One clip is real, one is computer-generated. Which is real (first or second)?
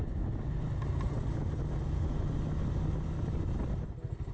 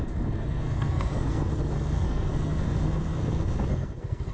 first